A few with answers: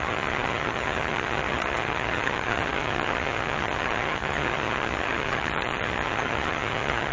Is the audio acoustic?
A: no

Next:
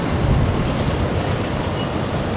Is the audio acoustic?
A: yes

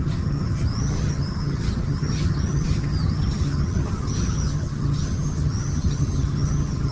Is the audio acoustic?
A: no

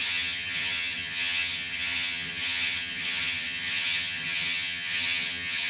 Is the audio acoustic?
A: no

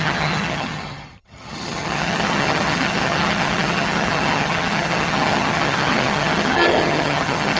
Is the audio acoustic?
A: no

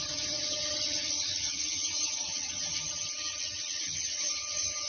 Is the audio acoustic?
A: no